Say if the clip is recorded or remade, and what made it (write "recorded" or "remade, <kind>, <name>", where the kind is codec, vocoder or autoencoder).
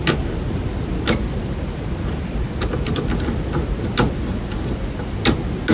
recorded